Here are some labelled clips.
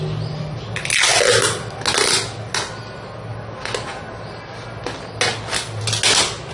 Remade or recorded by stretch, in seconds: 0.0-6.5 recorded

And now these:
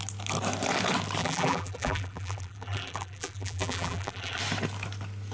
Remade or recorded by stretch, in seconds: 0.0-1.2 recorded; 1.2-4.4 remade; 4.4-5.3 recorded

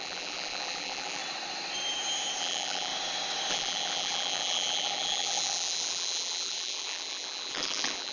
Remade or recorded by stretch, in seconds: 0.0-1.2 remade; 1.2-2.4 recorded; 2.4-2.9 remade; 2.9-3.5 recorded; 3.5-8.1 remade

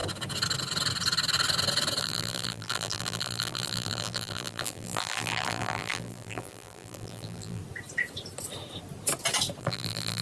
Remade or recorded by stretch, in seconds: 0.0-2.0 recorded; 2.0-7.6 remade; 7.6-9.6 recorded; 9.6-10.2 remade

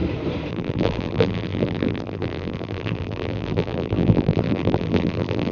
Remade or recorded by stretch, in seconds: 0.0-0.5 recorded; 0.5-5.5 remade

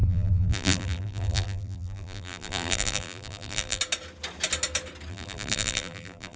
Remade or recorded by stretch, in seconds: 0.0-3.8 remade; 3.8-5.1 recorded; 5.1-6.4 remade

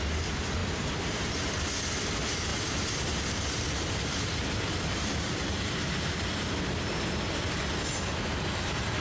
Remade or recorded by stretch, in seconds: 0.0-0.6 recorded; 0.6-1.3 remade; 1.3-2.5 recorded; 2.5-6.6 remade; 6.6-9.0 recorded

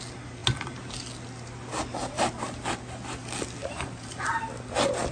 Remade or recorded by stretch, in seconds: 0.0-3.6 recorded; 3.6-4.4 remade; 4.4-5.1 recorded